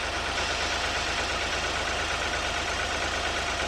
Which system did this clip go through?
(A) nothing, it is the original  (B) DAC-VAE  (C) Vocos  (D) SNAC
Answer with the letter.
A